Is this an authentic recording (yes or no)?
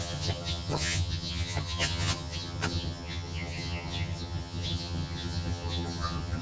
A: no